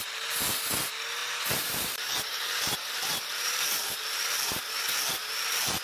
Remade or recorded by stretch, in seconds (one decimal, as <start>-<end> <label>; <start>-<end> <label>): 0.0-1.2 recorded; 1.2-4.7 remade; 4.7-5.8 recorded